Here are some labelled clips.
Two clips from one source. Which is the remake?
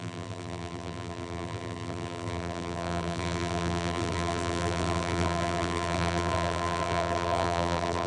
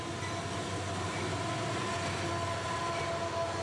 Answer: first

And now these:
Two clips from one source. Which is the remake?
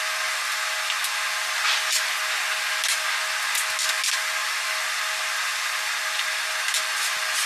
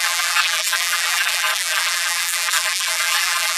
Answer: second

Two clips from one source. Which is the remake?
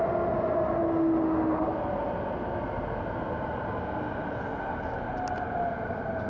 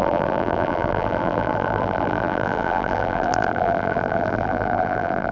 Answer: second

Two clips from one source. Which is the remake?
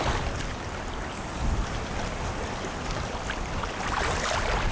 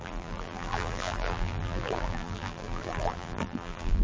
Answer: second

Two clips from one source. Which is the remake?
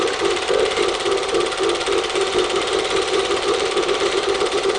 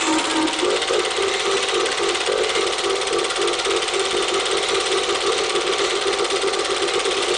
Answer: first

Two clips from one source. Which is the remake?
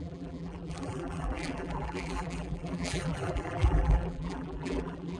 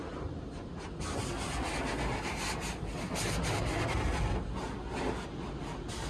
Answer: first